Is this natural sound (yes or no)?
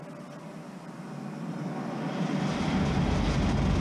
yes